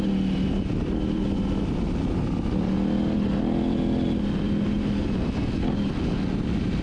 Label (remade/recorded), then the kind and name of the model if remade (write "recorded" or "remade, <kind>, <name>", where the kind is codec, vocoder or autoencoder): recorded